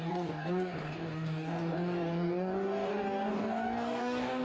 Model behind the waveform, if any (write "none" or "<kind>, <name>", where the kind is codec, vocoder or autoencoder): codec, DAC